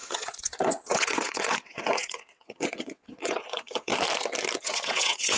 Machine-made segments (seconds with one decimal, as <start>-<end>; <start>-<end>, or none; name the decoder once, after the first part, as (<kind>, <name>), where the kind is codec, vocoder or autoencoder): 0.0-3.9 (vocoder, WaveNeXt); 4.6-5.4